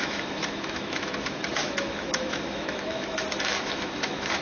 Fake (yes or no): yes